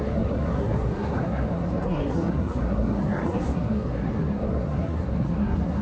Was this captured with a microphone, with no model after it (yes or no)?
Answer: no